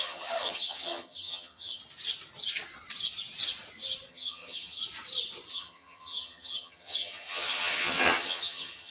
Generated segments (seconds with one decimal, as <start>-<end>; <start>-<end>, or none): 0.0-1.8; 4.1-4.8; 5.5-8.9